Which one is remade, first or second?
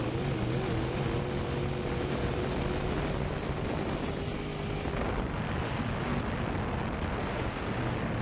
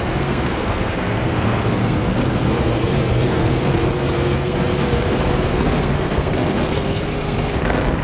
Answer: second